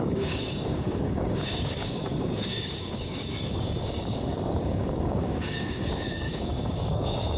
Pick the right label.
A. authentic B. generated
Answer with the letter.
B